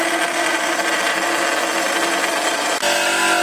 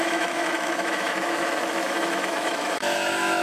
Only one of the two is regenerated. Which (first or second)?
second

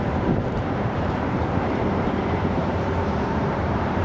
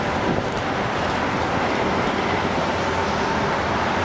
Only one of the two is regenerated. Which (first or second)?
first